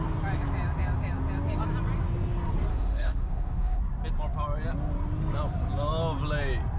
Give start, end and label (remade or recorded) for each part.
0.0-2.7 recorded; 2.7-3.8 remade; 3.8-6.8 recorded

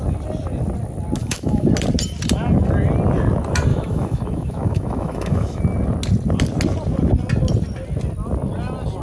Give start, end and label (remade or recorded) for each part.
0.0-1.2 recorded; 1.2-1.7 remade; 1.7-3.7 recorded; 3.7-5.6 remade; 5.6-9.0 recorded

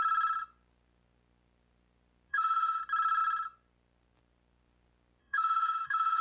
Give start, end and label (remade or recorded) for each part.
0.0-2.3 recorded; 2.3-2.8 remade; 2.8-5.2 recorded; 5.2-6.2 remade

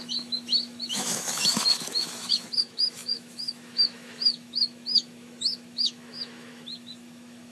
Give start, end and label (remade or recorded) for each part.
0.0-7.5 remade

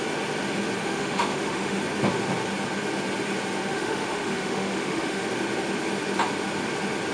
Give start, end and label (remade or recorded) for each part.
0.0-0.8 recorded; 0.8-1.8 remade; 1.8-3.7 recorded; 3.7-5.2 remade; 5.2-7.1 recorded